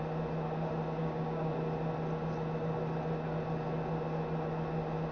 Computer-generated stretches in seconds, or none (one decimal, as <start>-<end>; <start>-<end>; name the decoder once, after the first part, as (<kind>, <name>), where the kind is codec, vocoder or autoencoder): 1.0-1.5 (codec, DAC)